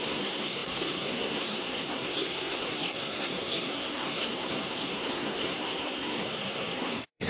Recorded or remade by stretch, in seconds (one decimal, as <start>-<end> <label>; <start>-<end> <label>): 0.0-7.3 remade